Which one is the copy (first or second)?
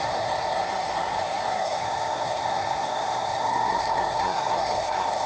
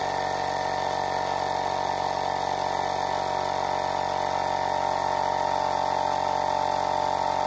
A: first